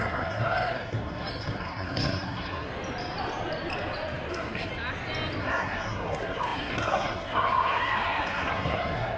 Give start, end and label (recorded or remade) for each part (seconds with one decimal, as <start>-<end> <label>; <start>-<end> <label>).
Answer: 0.0-2.7 remade; 2.7-4.3 recorded; 4.3-4.7 remade; 4.7-5.4 recorded; 5.4-9.2 remade